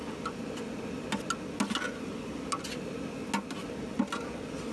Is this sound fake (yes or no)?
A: no